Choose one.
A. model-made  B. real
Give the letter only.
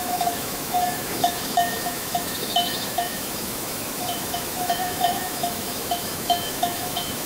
A